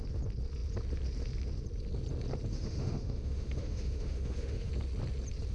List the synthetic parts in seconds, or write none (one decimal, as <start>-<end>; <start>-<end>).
2.5-4.7